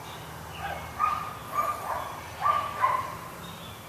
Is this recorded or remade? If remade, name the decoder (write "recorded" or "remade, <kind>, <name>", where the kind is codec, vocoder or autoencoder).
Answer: recorded